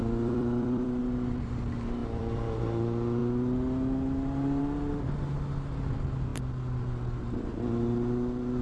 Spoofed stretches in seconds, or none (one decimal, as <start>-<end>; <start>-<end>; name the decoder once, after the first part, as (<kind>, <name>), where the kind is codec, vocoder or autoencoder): 0.0-1.0 (vocoder, BigVGAN v2); 2.0-2.6